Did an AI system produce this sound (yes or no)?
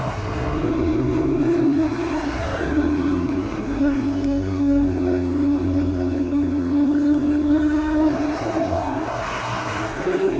yes